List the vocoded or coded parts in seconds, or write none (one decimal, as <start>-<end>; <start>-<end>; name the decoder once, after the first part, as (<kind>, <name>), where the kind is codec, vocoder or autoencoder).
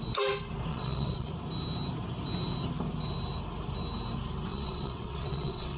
0.7-1.3 (vocoder, WaveNeXt); 4.5-5.8